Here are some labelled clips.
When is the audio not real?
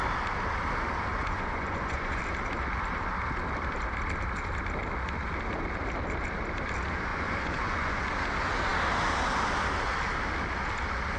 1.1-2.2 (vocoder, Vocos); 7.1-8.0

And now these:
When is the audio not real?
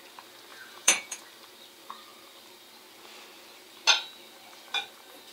0.5-1.2 (vocoder, Vocos)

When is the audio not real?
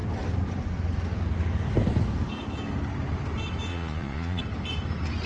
3.7-4.4 (vocoder, Vocos)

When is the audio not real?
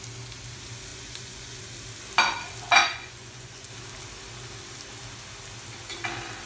0.9-1.6 (vocoder, Vocos); 2.8-3.7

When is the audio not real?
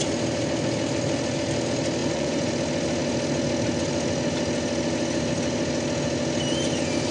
2.0-2.5 (vocoder, Vocos)